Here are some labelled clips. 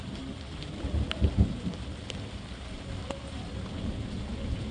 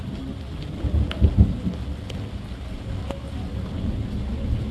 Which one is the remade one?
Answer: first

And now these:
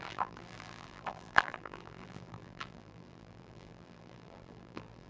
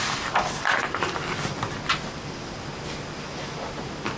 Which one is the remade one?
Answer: first